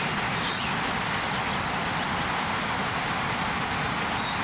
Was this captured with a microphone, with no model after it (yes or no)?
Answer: yes